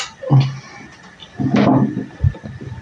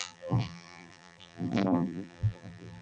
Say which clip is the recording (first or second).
first